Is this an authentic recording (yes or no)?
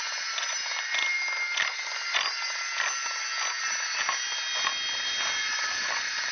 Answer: yes